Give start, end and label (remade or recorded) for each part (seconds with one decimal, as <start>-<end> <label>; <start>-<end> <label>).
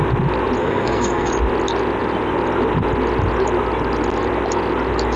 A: 0.0-0.6 recorded; 0.6-1.3 remade; 1.3-5.2 recorded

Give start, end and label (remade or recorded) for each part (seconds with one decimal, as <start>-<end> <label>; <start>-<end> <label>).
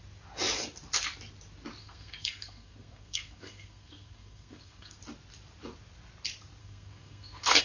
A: 0.0-1.8 recorded; 1.8-5.0 remade; 5.0-6.6 recorded; 6.6-7.6 remade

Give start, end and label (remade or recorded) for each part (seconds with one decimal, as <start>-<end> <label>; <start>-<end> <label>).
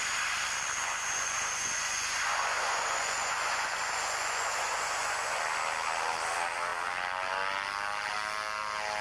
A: 0.0-0.8 recorded; 0.8-5.4 remade; 5.4-9.0 recorded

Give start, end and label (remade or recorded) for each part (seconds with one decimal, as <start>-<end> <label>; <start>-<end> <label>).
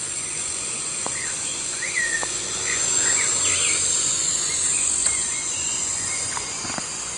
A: 0.0-3.3 remade; 3.3-4.0 recorded; 4.0-7.2 remade